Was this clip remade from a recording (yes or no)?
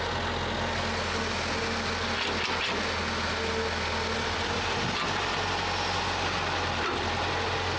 no